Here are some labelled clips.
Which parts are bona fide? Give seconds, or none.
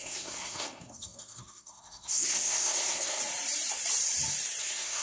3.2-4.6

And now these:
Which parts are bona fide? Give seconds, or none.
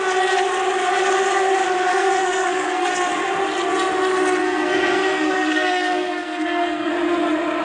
0.0-1.9; 2.9-4.4; 6.9-7.6